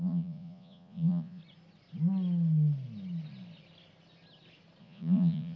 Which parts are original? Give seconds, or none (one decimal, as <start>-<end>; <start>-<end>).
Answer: 1.4-4.8